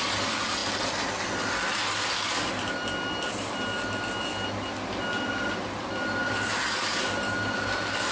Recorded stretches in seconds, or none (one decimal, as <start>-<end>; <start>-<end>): 0.0-8.1